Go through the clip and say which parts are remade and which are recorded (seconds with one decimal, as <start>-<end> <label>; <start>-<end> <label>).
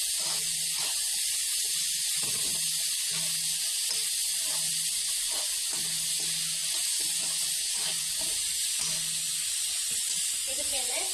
0.0-6.6 recorded; 6.6-8.1 remade; 8.1-10.4 recorded; 10.4-11.1 remade